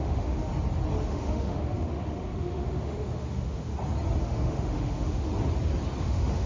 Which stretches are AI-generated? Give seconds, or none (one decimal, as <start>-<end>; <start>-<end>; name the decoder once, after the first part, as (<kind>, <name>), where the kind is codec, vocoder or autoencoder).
0.0-0.5 (autoencoder, DAC-VAE); 1.0-3.7; 4.2-5.3; 6.0-6.5